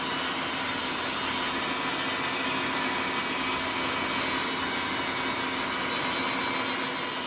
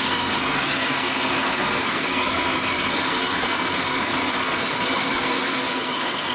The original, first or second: first